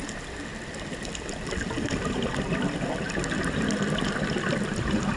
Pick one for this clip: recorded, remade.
recorded